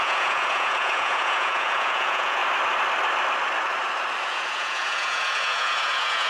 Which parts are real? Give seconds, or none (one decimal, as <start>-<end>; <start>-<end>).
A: 2.4-4.2